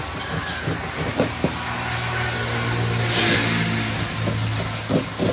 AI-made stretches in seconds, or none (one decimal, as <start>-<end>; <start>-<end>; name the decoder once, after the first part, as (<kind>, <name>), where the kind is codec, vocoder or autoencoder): none

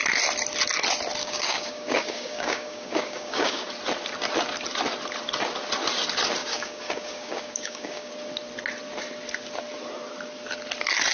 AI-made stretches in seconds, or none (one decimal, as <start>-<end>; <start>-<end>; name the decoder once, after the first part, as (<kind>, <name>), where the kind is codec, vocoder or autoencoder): 1.2-3.7 (codec, DAC); 6.4-8.1

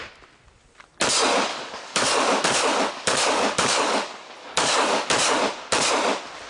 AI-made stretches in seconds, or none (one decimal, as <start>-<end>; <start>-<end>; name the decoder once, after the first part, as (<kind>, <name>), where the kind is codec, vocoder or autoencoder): 1.5-5.4 (codec, DAC)

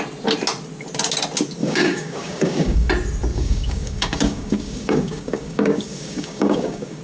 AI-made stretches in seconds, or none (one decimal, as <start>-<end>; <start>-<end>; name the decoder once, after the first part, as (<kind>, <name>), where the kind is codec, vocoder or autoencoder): 1.6-2.9 (codec, DAC); 3.3-7.0

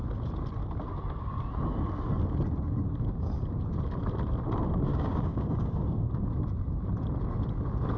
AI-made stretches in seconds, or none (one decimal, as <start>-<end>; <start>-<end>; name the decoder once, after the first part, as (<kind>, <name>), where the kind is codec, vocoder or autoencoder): 4.9-6.1 (codec, DAC)

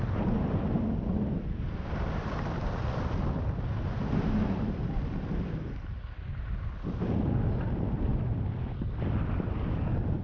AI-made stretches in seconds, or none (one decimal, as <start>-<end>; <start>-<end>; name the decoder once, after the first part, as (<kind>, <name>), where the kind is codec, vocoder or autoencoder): none